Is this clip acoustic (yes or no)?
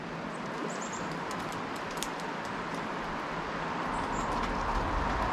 yes